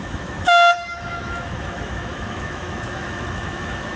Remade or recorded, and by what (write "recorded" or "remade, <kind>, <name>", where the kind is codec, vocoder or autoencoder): remade, autoencoder, DAC-VAE